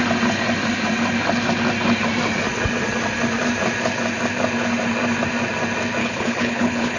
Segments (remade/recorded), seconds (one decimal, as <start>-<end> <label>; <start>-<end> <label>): 0.0-6.0 recorded; 6.0-7.0 remade